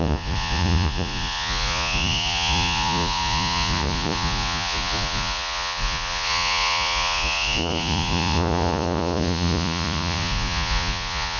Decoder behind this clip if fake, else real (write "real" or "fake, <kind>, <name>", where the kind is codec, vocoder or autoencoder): fake, vocoder, Vocos